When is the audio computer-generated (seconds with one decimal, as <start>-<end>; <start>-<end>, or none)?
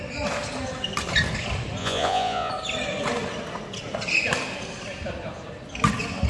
1.8-2.5